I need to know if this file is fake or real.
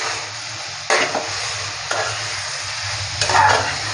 real